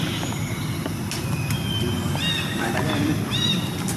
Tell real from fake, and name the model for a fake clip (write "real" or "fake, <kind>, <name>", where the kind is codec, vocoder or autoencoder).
real